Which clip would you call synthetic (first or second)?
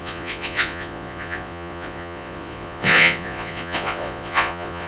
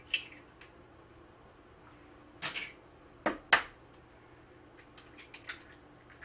first